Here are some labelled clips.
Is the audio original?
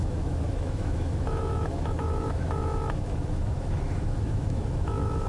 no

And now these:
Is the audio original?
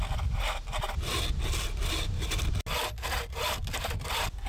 yes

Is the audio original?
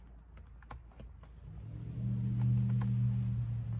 yes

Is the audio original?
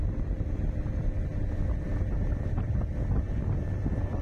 yes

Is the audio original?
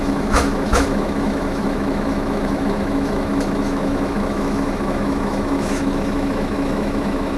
no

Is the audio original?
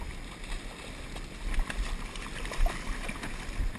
yes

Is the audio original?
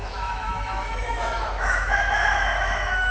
no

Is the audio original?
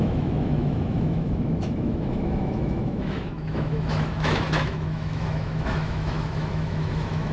no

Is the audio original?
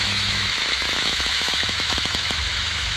no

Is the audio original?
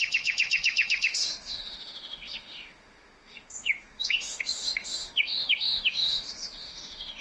no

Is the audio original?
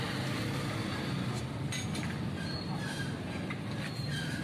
yes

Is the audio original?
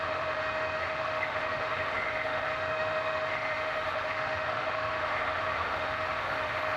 no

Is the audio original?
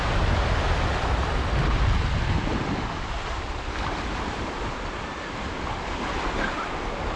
yes